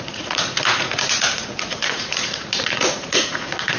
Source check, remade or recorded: remade